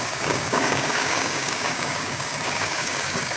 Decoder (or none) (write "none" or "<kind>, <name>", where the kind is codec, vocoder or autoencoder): codec, DAC